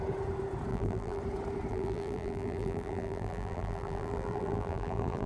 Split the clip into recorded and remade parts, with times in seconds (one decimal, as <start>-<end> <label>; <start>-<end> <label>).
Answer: 0.0-0.7 recorded; 0.7-1.2 remade; 1.2-1.7 recorded; 1.7-5.3 remade